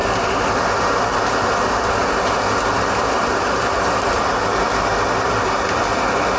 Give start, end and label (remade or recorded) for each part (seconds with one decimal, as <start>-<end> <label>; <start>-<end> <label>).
0.0-0.8 remade; 0.8-2.0 recorded; 2.0-5.8 remade; 5.8-6.4 recorded